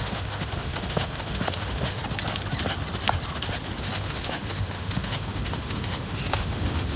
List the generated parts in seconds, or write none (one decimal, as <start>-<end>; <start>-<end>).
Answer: 0.0-2.0; 3.8-7.0